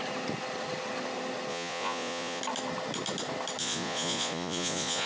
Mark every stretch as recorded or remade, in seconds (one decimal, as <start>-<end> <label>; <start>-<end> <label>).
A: 0.0-1.5 recorded; 1.5-2.4 remade; 2.4-3.6 recorded; 3.6-5.1 remade